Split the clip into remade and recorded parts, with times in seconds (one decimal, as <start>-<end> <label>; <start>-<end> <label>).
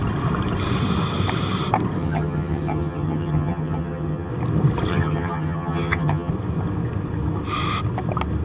0.0-2.0 recorded; 2.0-4.3 remade; 4.3-4.9 recorded; 4.9-6.3 remade; 6.3-8.4 recorded